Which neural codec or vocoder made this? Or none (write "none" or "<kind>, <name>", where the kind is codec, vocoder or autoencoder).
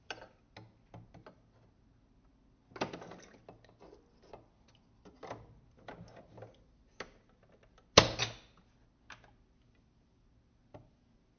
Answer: none